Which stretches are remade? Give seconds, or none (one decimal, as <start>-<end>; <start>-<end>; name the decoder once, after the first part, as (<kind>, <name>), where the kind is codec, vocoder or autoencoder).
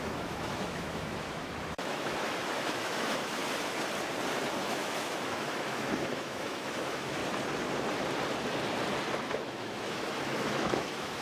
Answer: 0.0-3.4 (autoencoder, DAC-VAE); 4.6-7.2; 9.3-11.2